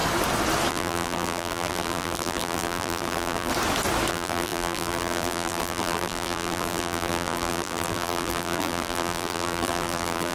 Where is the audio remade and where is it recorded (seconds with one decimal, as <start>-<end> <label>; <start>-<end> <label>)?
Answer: 0.0-0.7 recorded; 0.7-3.5 remade; 3.5-4.1 recorded; 4.1-10.3 remade